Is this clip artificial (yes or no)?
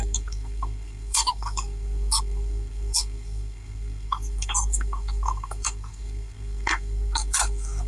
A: yes